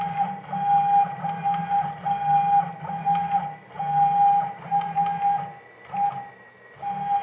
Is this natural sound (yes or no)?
yes